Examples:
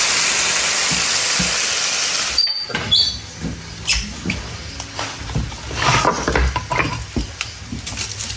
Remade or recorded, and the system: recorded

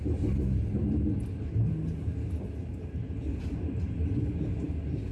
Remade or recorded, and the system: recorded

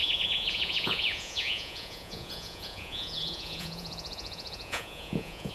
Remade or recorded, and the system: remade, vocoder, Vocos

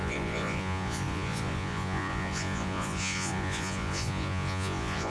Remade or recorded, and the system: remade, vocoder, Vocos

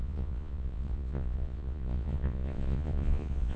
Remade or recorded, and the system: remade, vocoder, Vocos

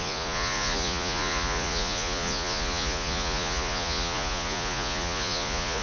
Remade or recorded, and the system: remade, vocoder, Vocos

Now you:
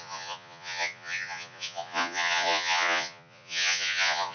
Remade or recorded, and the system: remade, vocoder, Vocos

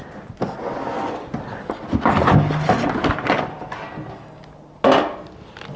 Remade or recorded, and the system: recorded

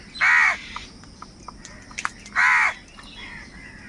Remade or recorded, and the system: recorded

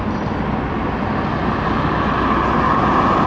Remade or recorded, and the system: recorded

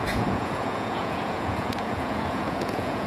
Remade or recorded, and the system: remade, vocoder, Vocos